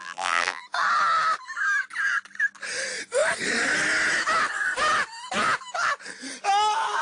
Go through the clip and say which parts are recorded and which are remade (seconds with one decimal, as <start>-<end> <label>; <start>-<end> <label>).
0.0-0.6 remade; 0.6-7.0 recorded

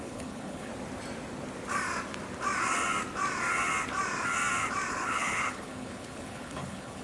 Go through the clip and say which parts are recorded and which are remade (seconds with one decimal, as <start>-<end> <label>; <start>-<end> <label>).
0.0-0.7 remade; 0.7-4.9 recorded; 4.9-7.0 remade

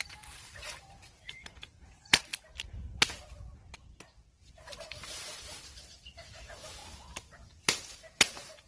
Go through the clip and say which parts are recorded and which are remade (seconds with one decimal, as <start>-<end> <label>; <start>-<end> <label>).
0.0-2.3 remade; 2.3-4.5 recorded; 4.5-6.8 remade; 6.8-7.6 recorded; 7.6-8.7 remade

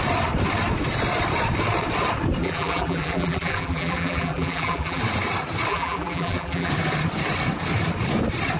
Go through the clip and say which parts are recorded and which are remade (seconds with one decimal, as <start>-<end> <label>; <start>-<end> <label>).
0.0-2.4 recorded; 2.4-5.0 remade; 5.0-5.7 recorded; 5.7-6.7 remade; 6.7-8.6 recorded

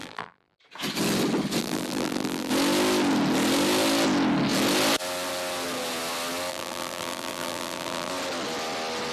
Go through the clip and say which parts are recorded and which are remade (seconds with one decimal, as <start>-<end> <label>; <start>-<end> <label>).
0.0-0.6 remade; 0.6-1.6 recorded; 1.6-2.5 remade; 2.5-6.5 recorded; 6.5-8.1 remade; 8.1-9.1 recorded

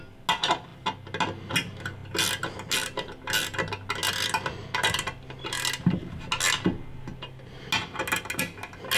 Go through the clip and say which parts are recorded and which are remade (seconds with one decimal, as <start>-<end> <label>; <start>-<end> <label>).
0.0-9.0 recorded

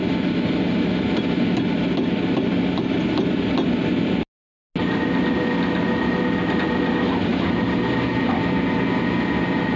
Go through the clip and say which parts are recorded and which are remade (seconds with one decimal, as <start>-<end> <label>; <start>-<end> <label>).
0.0-9.8 recorded

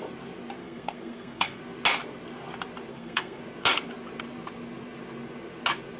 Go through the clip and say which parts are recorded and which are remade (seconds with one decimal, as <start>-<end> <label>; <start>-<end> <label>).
0.0-0.6 recorded; 0.6-1.6 remade; 1.6-2.9 recorded; 2.9-3.4 remade; 3.4-6.0 recorded